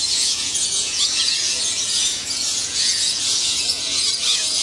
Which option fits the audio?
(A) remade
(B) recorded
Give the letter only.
A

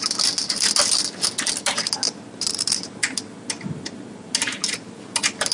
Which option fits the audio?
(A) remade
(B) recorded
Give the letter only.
B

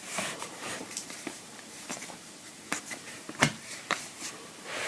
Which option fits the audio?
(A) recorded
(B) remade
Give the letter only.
B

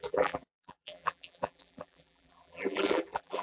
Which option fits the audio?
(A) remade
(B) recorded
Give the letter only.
A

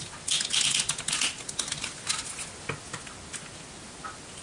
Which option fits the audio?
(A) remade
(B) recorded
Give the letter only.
B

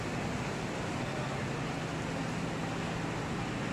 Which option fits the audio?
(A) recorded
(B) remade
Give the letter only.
A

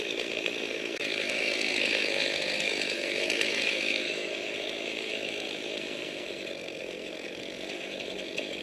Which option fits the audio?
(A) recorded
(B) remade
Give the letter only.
B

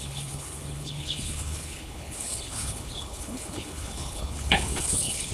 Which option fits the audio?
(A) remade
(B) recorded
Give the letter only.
A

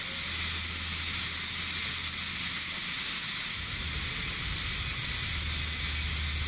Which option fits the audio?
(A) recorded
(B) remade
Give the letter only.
A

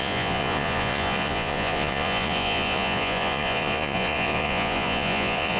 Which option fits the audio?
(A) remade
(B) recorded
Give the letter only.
A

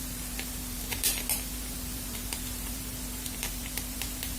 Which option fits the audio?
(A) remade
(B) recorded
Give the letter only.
A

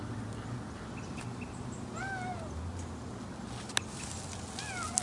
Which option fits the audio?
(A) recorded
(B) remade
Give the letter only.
A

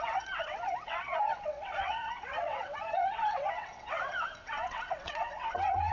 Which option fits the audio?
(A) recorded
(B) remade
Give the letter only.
B